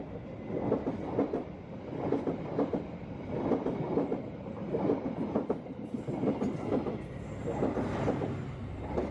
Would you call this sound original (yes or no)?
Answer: yes